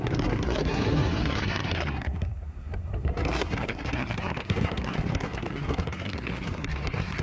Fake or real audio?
fake